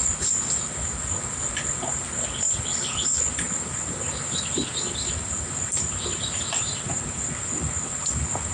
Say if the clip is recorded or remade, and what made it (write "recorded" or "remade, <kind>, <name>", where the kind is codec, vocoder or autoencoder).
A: recorded